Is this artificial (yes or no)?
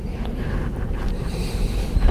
yes